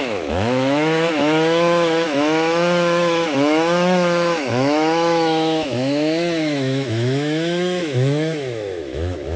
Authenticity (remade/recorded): remade